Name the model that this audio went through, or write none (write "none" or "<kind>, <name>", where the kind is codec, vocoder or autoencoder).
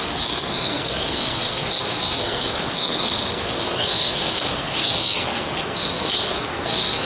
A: codec, SNAC